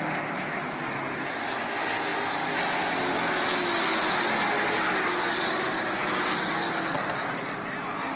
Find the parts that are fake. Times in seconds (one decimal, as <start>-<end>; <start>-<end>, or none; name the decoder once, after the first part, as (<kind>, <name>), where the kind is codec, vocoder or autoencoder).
none